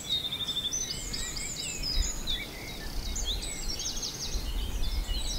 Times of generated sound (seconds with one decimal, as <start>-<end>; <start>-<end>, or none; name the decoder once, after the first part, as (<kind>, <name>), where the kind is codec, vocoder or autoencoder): none